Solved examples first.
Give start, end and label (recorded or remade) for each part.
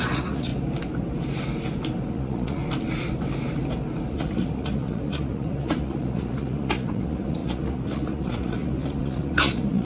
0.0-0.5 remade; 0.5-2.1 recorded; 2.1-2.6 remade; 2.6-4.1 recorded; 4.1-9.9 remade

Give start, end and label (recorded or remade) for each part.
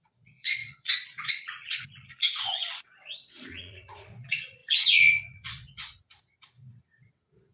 0.0-7.5 remade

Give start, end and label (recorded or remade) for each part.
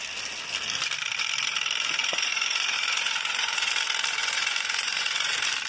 0.0-2.0 recorded; 2.0-3.7 remade; 3.7-4.2 recorded; 4.2-5.3 remade; 5.3-5.7 recorded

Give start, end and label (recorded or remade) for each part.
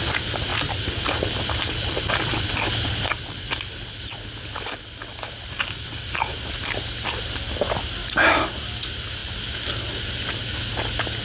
0.0-11.2 recorded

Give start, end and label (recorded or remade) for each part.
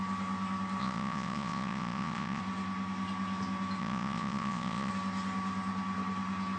0.0-0.8 recorded; 0.8-2.4 remade; 2.4-3.8 recorded; 3.8-4.9 remade; 4.9-6.6 recorded